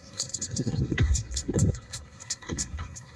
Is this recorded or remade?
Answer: remade